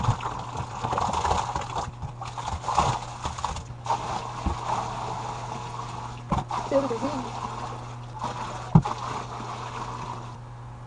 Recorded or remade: recorded